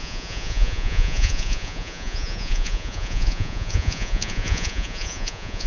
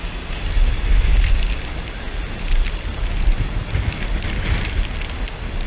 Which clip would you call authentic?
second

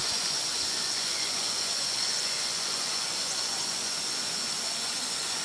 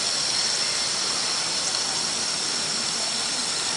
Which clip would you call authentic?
second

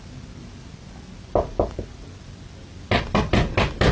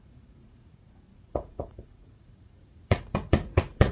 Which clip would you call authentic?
first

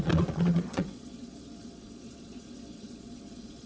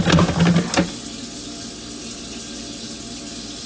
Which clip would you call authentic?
second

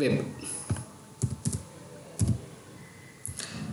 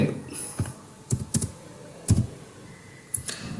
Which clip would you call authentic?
first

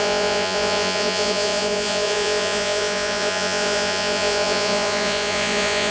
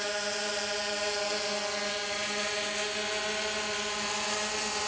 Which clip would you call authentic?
second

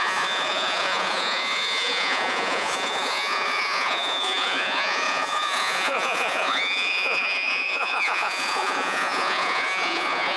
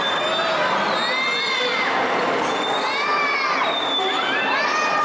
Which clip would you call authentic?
second